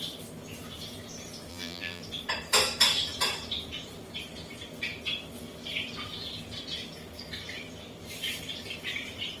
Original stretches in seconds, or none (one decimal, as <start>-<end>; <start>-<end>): 0.0-1.5; 2.0-9.4